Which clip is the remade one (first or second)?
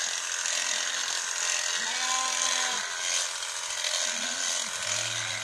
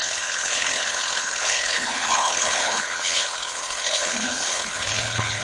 second